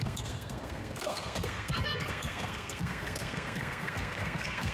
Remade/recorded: remade